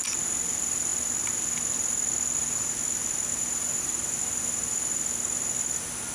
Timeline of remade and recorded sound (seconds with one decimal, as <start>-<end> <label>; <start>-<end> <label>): 0.0-6.1 recorded